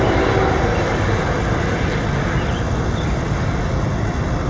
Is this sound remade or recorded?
recorded